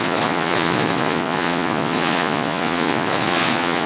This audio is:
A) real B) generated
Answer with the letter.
B